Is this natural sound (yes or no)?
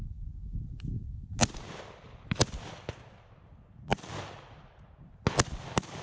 yes